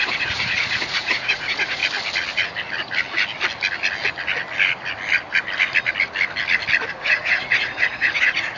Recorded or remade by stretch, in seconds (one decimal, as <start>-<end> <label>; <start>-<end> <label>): 0.0-1.8 remade; 1.8-6.9 recorded; 6.9-8.6 remade